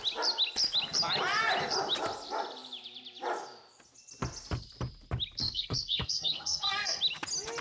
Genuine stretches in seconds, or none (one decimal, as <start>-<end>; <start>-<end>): 0.0-5.4; 7.0-7.6